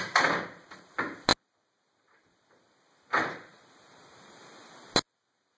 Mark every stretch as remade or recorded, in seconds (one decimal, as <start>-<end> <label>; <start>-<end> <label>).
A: 0.0-5.6 recorded